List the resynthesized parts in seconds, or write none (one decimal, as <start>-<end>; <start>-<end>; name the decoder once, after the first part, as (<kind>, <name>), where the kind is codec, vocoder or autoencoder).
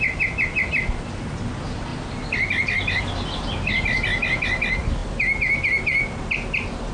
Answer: none